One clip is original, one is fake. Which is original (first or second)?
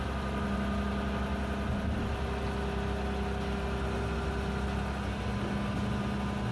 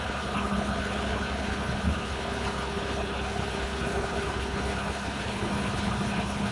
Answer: first